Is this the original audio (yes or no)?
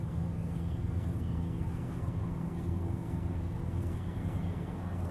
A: no